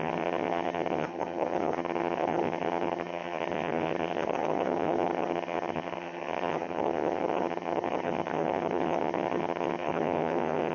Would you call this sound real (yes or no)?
no